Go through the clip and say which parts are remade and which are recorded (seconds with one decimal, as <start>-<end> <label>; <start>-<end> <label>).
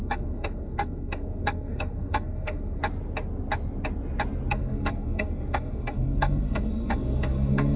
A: 0.0-2.8 remade; 2.8-4.5 recorded; 4.5-7.8 remade